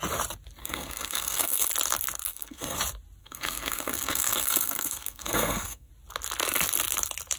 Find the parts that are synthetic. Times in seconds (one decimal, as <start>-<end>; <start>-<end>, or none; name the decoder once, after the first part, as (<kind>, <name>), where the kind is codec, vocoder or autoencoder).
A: 0.6-1.7 (codec, SNAC); 2.3-2.8; 3.2-5.9